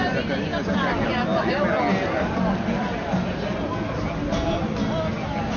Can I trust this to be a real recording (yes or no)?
yes